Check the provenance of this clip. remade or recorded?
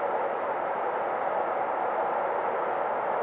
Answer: recorded